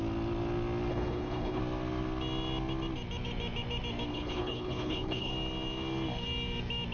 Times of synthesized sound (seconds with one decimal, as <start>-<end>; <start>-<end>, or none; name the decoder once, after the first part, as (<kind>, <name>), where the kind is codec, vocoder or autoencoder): 0.9-1.6 (codec, HILCodec); 4.1-5.3